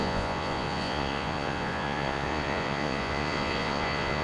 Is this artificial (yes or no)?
yes